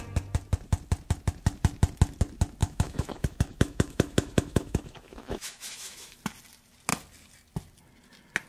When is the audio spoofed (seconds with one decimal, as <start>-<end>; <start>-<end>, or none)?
2.6-6.2